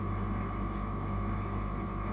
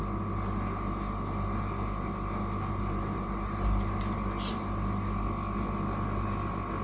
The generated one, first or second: first